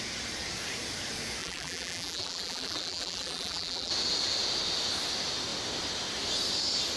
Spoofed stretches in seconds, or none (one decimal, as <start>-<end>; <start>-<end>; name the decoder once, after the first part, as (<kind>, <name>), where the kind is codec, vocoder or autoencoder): 1.4-3.9 (vocoder, BigVGAN v2)